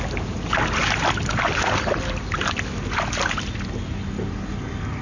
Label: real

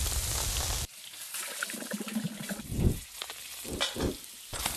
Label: real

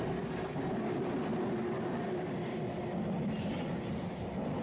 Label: real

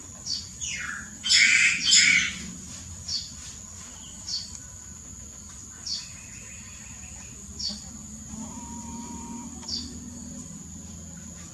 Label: real